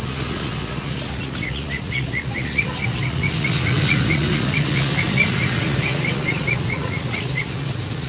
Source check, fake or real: fake